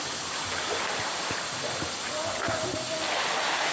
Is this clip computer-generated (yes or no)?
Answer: no